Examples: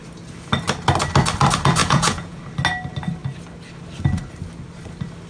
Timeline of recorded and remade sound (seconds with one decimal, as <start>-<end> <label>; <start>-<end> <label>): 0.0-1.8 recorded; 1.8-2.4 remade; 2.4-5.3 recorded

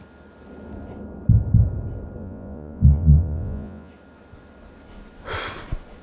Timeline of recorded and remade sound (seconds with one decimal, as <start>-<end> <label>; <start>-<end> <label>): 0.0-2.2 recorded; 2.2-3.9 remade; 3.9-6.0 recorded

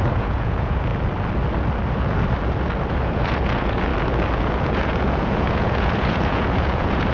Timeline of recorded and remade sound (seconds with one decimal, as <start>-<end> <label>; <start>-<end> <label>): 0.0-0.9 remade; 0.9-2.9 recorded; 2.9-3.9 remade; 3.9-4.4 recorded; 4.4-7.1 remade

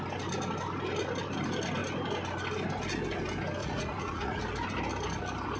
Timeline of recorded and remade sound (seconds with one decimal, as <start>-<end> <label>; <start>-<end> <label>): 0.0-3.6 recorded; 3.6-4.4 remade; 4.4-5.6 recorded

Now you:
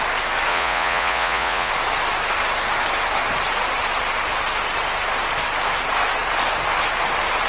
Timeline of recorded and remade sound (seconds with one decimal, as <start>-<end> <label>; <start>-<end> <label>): 0.0-0.5 recorded; 0.5-1.7 remade; 1.7-7.5 recorded